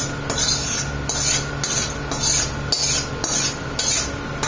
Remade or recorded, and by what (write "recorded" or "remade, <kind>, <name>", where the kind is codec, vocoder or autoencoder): recorded